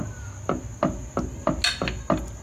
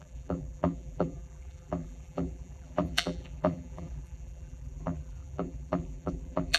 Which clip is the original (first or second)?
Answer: first